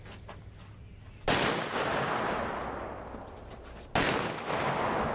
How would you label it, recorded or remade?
recorded